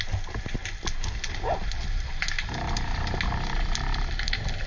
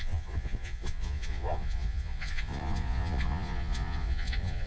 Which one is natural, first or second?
first